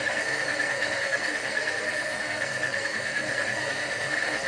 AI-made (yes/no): yes